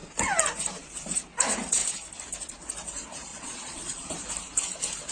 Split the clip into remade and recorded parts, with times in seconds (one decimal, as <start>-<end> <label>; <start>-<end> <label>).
0.0-3.3 recorded; 3.3-4.1 remade; 4.1-5.1 recorded

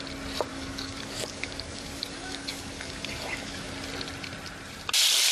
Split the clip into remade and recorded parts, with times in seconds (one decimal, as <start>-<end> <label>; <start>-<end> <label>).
0.0-0.5 recorded; 0.5-3.7 remade; 3.7-5.3 recorded

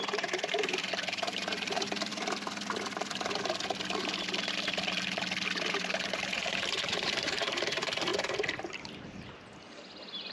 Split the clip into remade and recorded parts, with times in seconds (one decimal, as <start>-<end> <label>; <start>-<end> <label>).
0.0-2.1 remade; 2.1-5.7 recorded; 5.7-8.1 remade; 8.1-10.3 recorded

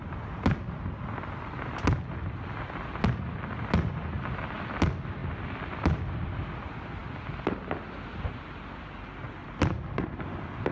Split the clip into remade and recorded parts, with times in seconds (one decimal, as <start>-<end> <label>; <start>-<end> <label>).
0.0-10.7 recorded